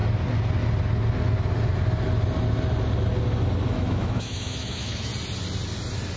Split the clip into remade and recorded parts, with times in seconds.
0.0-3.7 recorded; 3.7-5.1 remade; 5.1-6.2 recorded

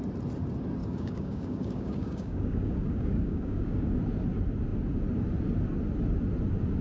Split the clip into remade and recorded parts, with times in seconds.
0.0-0.8 recorded; 0.8-4.0 remade; 4.0-6.8 recorded

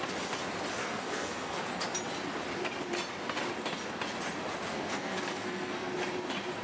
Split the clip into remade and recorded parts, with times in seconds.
0.0-0.8 recorded; 0.8-1.6 remade; 1.6-4.7 recorded; 4.7-5.9 remade; 5.9-6.6 recorded

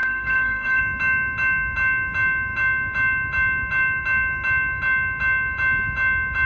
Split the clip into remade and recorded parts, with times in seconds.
0.0-0.8 remade; 0.8-6.5 recorded

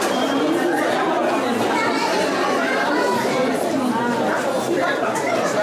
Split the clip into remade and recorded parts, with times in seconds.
0.0-1.2 remade; 1.2-4.6 recorded; 4.6-5.6 remade

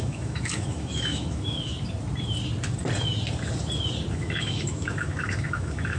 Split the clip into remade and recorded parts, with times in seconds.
0.0-1.7 remade; 1.7-4.1 recorded; 4.1-6.0 remade